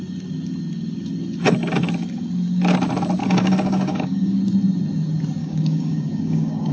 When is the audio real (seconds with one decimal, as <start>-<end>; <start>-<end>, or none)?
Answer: 0.0-3.2; 4.4-5.4